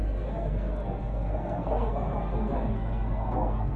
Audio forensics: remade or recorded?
remade